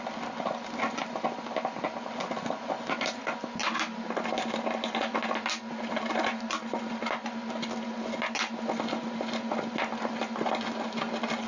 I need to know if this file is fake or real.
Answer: real